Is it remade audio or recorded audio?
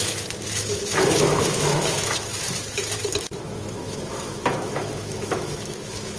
remade